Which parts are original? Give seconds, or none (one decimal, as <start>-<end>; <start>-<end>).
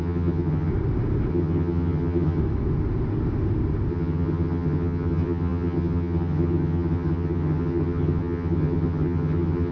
0.7-1.3; 2.4-3.9